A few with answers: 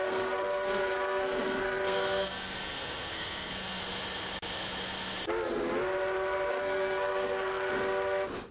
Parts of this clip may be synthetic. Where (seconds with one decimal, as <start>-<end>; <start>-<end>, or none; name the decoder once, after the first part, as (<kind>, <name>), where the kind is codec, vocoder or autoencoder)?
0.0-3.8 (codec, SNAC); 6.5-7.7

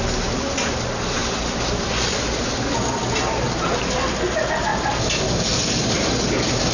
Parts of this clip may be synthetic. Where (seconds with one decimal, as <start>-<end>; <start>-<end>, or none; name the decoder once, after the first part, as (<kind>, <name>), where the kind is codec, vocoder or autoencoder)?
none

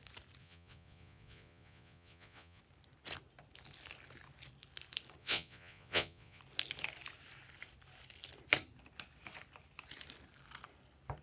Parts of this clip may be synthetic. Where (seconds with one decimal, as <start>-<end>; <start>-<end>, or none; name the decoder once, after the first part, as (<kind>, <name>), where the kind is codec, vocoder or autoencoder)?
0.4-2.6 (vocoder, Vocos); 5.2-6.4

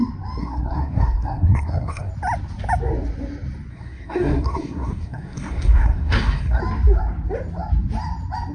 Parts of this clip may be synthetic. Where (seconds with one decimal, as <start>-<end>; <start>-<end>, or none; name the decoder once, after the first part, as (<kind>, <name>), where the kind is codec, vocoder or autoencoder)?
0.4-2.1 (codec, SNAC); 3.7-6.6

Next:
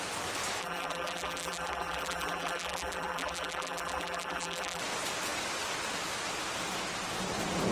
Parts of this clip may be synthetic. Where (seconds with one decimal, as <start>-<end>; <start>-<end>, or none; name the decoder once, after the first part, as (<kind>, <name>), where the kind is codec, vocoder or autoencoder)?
0.6-4.8 (vocoder, BigVGAN v2)